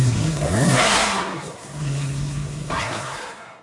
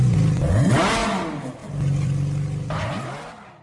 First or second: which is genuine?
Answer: second